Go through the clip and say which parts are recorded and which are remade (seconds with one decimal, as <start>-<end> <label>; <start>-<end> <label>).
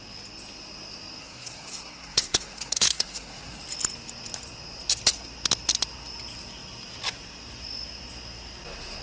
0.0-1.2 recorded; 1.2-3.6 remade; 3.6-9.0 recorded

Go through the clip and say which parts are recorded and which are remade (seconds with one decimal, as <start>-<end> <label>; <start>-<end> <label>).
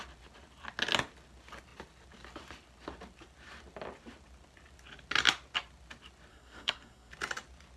0.0-6.3 recorded; 6.3-7.1 remade; 7.1-7.8 recorded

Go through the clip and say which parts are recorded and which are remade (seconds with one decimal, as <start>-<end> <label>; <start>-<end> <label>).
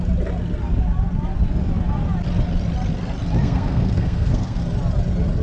0.0-3.4 recorded; 3.4-4.6 remade; 4.6-5.4 recorded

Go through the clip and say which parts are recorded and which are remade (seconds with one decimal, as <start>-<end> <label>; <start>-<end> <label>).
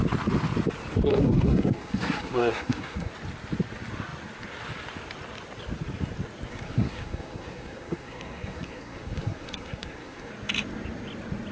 0.0-1.1 recorded; 1.1-3.1 remade; 3.1-6.5 recorded; 6.5-10.3 remade; 10.3-11.5 recorded